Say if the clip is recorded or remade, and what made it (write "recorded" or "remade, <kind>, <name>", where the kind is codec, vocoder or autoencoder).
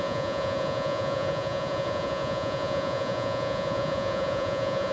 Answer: remade, vocoder, Vocos